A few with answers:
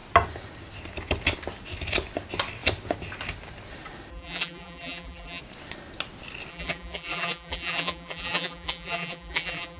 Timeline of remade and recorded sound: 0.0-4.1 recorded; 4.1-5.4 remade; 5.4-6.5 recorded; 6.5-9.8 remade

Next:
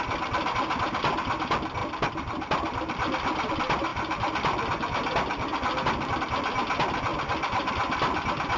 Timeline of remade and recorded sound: 0.0-1.8 recorded; 1.8-3.5 remade; 3.5-7.1 recorded; 7.1-8.6 remade

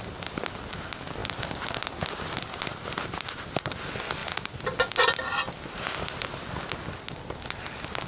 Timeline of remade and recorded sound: 0.0-1.2 recorded; 1.2-1.9 remade; 1.9-4.2 recorded; 4.2-4.8 remade; 4.8-8.1 recorded

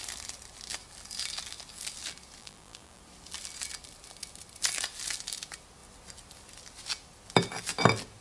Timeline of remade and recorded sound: 0.0-2.4 recorded; 2.4-3.0 remade; 3.0-8.2 recorded

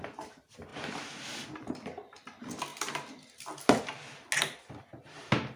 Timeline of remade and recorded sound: 0.0-0.7 recorded; 0.7-1.6 remade; 1.6-5.6 recorded

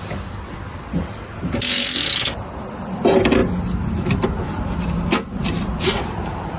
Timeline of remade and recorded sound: 0.0-6.6 recorded